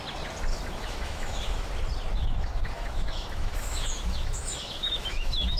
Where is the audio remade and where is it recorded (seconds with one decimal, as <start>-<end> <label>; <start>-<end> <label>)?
0.0-0.5 recorded; 0.5-1.7 remade; 1.7-2.2 recorded; 2.2-5.6 remade